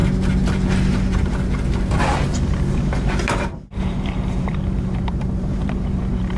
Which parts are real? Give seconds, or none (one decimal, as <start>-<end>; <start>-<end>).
0.0-2.7

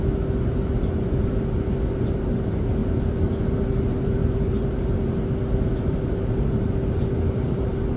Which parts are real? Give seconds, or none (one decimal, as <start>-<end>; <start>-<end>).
0.0-4.2; 4.7-8.0

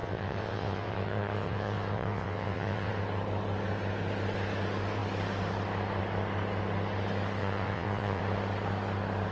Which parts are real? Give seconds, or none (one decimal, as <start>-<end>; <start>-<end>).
2.9-7.4; 8.2-9.3

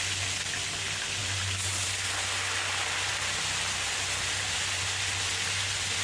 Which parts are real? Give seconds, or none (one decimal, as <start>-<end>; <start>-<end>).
0.0-6.0

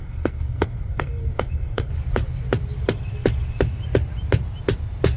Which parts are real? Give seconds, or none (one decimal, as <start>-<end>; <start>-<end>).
1.9-5.2

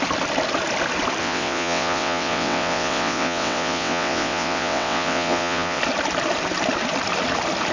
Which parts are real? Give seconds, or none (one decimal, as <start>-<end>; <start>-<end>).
0.0-1.2; 5.8-7.7

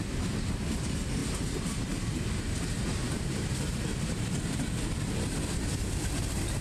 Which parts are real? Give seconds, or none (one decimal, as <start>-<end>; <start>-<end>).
0.0-3.0; 4.8-6.6

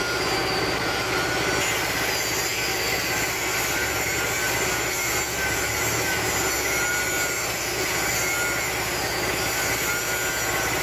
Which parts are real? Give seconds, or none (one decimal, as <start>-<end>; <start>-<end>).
0.0-10.8